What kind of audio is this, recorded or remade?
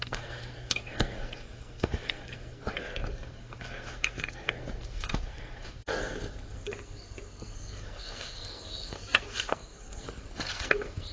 remade